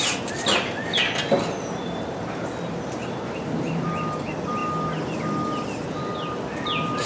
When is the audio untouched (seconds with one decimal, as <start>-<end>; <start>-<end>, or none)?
0.0-7.1